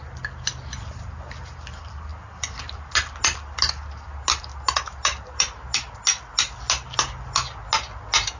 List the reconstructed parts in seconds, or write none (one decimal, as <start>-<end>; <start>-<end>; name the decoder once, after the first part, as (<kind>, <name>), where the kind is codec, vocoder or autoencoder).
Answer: none